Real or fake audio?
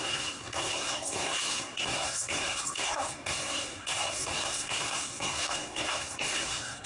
fake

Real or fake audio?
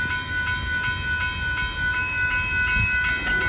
real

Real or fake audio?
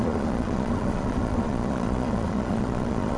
fake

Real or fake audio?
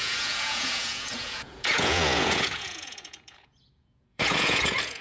fake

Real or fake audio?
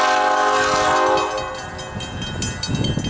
real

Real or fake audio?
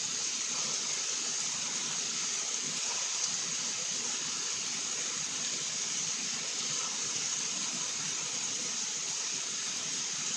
real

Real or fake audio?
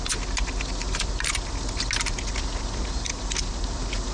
real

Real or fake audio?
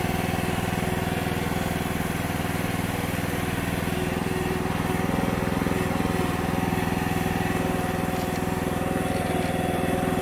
real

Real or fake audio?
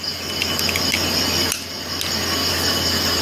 real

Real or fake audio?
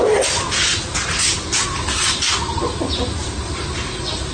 real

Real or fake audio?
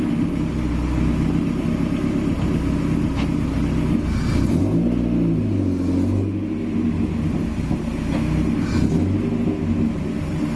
real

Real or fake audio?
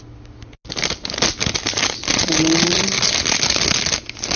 real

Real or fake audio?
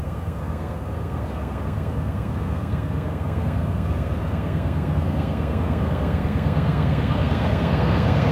fake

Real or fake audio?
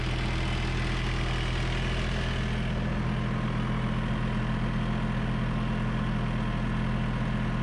real